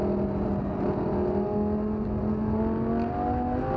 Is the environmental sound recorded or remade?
recorded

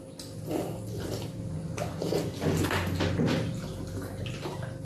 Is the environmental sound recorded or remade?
recorded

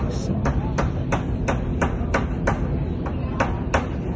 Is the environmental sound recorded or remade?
recorded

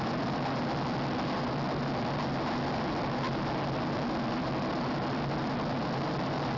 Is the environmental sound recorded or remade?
recorded